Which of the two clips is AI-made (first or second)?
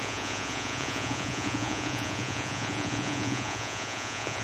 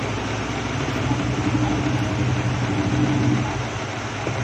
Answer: first